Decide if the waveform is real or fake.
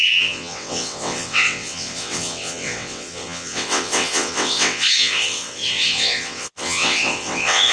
fake